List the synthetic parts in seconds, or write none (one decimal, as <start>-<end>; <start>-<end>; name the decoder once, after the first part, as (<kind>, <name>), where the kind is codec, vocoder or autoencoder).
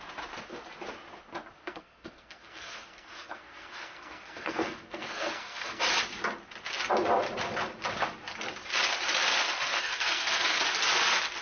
1.6-5.8 (codec, SNAC); 9.6-10.6